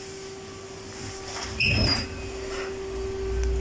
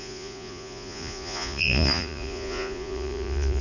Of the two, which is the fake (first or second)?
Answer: second